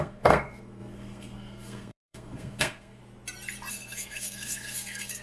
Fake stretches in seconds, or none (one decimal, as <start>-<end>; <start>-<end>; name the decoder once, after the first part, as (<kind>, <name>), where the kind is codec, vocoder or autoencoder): 0.0-3.0 (codec, SNAC); 3.7-5.2

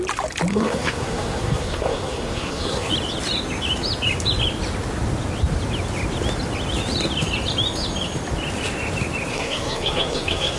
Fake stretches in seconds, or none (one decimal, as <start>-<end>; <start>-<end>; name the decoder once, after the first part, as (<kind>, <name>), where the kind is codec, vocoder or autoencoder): 0.5-2.9 (codec, SNAC); 9.3-10.6

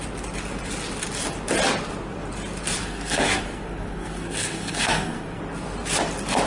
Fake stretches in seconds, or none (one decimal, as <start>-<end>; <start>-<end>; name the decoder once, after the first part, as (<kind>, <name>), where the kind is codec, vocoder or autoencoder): 2.8-5.4 (codec, SNAC)

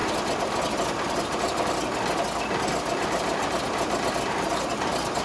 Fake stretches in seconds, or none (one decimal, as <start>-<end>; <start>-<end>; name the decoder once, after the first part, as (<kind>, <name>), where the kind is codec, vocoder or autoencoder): none

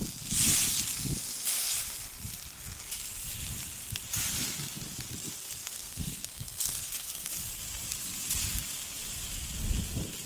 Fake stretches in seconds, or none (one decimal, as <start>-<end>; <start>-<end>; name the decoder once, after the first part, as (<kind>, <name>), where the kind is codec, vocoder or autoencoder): 5.6-7.3 (codec, SNAC)